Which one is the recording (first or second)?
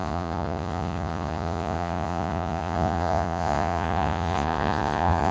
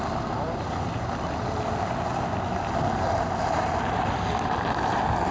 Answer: second